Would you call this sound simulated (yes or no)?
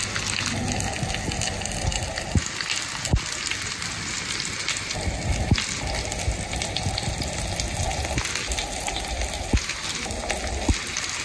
no